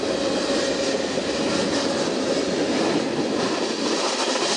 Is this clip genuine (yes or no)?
yes